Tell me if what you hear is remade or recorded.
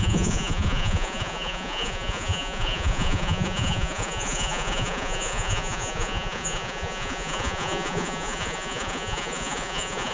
remade